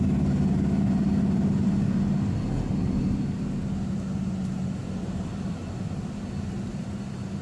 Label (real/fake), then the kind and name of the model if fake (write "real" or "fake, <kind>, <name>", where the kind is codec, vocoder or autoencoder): real